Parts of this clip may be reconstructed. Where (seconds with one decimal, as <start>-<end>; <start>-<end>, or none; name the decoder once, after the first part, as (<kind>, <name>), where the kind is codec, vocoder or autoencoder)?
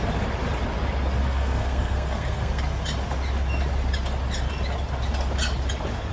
1.2-2.6 (codec, SNAC)